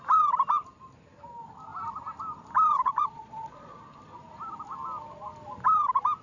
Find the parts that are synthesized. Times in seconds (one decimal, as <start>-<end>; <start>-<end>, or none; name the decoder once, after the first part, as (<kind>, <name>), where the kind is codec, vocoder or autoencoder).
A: 2.7-3.8 (vocoder, Vocos)